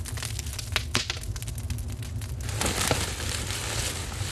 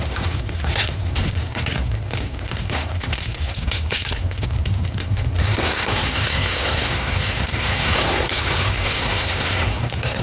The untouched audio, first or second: first